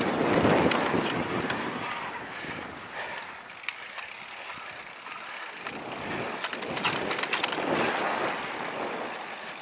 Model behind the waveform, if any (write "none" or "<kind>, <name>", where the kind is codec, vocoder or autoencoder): none